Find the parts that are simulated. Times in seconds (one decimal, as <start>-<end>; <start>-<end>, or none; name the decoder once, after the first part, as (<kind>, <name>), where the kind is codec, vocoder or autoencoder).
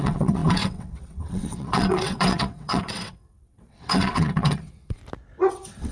0.0-5.0 (vocoder, WaveNeXt); 5.5-5.9